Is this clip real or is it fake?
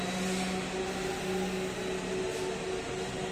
real